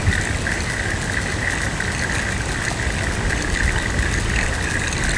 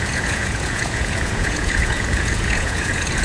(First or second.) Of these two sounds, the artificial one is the second